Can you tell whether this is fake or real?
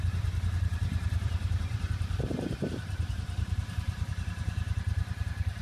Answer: fake